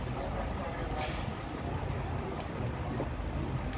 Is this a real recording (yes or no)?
yes